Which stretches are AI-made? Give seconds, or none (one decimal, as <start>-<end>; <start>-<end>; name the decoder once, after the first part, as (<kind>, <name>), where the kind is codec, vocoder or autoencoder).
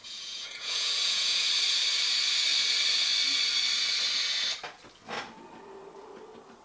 0.0-1.5 (vocoder, Vocos)